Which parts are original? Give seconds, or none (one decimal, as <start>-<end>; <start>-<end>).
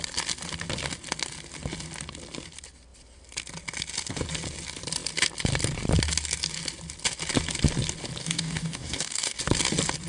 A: 0.0-8.2; 9.4-10.1